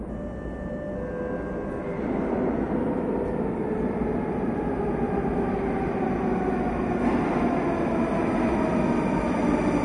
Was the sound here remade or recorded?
recorded